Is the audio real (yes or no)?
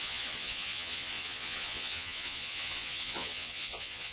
no